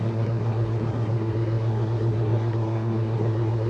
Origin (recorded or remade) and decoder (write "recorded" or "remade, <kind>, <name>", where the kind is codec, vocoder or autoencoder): remade, codec, SNAC